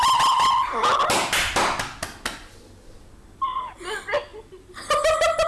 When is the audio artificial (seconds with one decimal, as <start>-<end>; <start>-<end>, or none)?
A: none

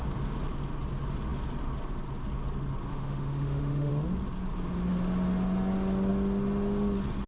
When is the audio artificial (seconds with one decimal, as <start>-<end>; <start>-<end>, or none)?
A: 2.9-3.9

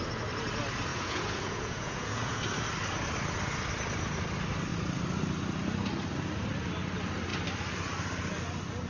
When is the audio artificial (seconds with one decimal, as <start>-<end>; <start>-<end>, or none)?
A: 0.9-2.4

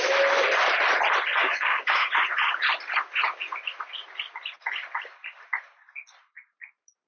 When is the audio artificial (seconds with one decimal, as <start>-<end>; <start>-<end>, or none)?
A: 1.4-2.1

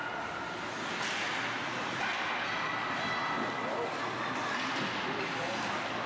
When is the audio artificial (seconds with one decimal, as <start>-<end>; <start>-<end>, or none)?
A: 1.6-2.1